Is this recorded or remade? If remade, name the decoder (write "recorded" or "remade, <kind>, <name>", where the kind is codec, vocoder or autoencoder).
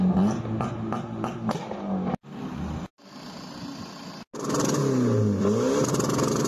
recorded